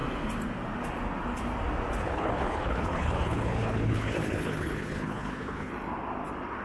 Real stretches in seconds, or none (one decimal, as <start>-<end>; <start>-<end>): 0.0-2.0; 5.7-6.6